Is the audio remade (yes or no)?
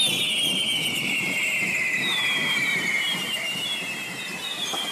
no